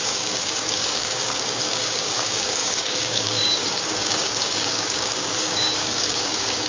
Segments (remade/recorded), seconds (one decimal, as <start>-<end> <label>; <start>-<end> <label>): 0.0-6.7 remade

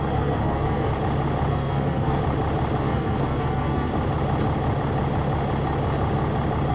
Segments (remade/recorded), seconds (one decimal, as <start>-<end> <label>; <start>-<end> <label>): 0.0-0.9 remade; 0.9-1.5 recorded; 1.5-2.2 remade; 2.2-2.8 recorded; 2.8-3.9 remade; 3.9-6.7 recorded